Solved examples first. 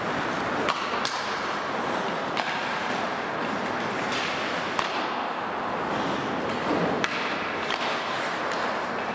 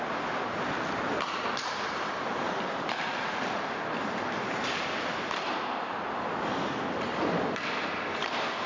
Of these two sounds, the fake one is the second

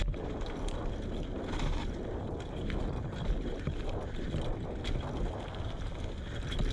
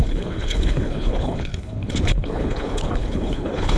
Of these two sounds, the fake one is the second